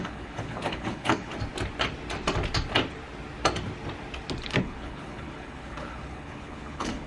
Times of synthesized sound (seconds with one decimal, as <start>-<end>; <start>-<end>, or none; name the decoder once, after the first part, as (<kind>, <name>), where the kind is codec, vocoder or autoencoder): 0.0-1.3 (codec, HILCodec); 4.6-7.1

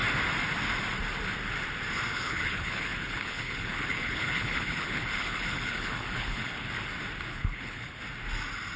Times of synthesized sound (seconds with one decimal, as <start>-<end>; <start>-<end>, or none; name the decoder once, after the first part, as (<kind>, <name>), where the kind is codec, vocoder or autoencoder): 2.1-6.7 (codec, HILCodec); 7.3-8.0

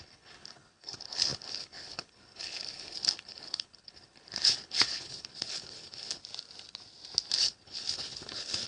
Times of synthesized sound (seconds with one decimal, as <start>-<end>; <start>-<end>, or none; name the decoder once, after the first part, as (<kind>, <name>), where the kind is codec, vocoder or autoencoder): 0.0-6.2 (codec, HILCodec); 7.3-8.7

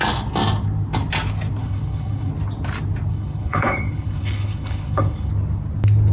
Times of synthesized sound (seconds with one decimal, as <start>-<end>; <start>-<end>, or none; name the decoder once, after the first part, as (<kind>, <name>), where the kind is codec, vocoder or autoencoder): 1.6-2.3 (codec, HILCodec); 3.1-5.3

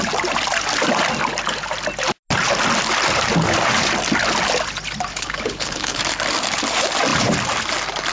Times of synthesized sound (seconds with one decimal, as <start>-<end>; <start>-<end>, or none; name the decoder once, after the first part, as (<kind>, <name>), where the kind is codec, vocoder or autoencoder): 5.1-6.0 (codec, HILCodec)

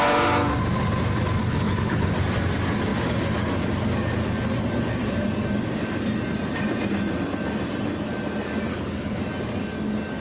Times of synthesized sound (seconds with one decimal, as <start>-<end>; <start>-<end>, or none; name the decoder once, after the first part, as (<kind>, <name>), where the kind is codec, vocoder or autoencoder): 1.4-2.1 (codec, HILCodec); 8.7-9.2

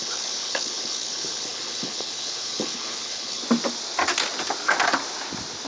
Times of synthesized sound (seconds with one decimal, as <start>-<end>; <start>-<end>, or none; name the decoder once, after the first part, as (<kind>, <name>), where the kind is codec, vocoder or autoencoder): 0.0-3.4 (codec, HILCodec)

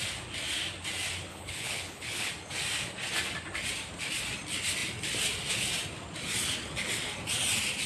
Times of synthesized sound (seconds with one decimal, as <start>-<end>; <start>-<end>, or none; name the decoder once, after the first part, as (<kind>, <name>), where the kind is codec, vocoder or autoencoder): 1.3-2.3 (codec, HILCodec)